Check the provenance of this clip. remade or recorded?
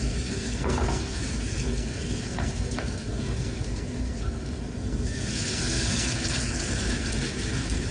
remade